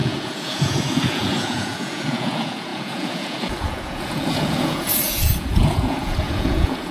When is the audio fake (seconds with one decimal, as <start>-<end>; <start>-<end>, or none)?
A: 0.0-6.9

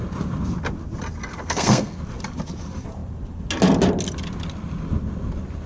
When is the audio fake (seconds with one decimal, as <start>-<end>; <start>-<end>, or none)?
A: 1.3-2.0

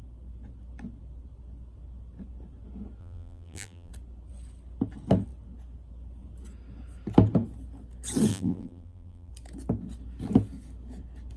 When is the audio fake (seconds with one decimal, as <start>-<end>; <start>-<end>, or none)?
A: 3.0-3.9; 8.3-9.3

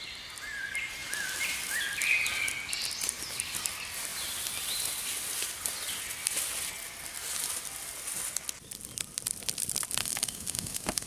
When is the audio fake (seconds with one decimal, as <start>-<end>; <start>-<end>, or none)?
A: 10.0-11.1

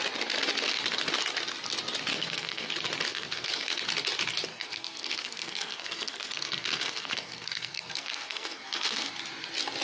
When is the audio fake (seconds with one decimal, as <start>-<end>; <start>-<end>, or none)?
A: 2.1-2.7; 3.1-3.8; 4.5-9.1